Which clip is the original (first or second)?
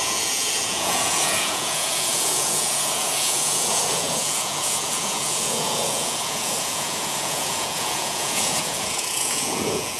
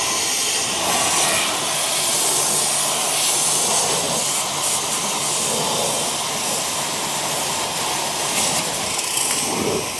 second